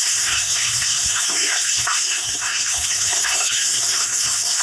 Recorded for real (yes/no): no